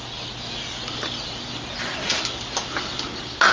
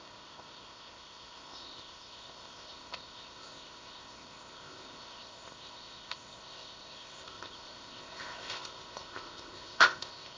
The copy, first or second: second